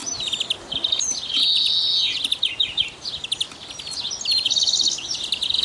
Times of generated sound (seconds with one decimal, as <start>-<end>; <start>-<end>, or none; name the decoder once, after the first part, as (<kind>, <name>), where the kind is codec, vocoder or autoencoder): none